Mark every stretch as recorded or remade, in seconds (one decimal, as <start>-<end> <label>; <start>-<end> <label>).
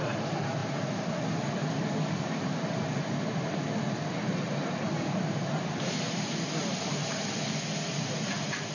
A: 0.0-7.1 remade; 7.1-7.9 recorded; 7.9-8.7 remade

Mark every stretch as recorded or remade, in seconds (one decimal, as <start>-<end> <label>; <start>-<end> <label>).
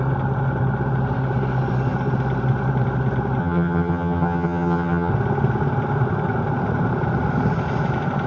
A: 0.0-3.4 recorded; 3.4-5.1 remade; 5.1-8.3 recorded